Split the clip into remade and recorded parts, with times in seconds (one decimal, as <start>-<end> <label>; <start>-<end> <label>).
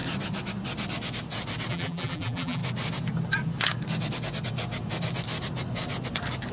0.0-1.7 recorded; 1.7-2.6 remade; 2.6-6.5 recorded